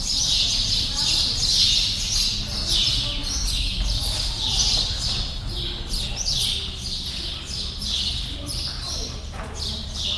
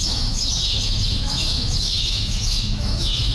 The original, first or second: first